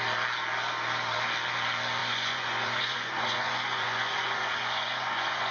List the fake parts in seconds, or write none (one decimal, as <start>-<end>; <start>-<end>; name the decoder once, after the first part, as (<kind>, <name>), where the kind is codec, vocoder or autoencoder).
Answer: 2.0-5.5 (vocoder, Vocos)